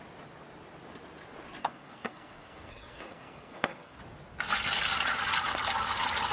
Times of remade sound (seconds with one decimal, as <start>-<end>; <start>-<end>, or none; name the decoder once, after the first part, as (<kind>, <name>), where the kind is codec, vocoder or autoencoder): 1.6-4.0 (codec, SNAC)